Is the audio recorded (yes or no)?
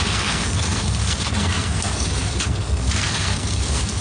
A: no